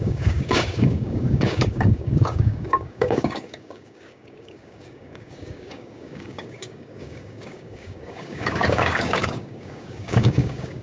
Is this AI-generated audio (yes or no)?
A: yes